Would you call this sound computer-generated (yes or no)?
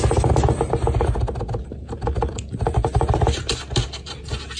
no